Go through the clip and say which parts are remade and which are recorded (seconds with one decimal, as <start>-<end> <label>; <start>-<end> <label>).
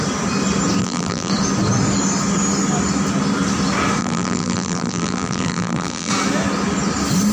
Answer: 0.0-0.8 recorded; 0.8-1.3 remade; 1.3-4.0 recorded; 4.0-6.1 remade; 6.1-7.3 recorded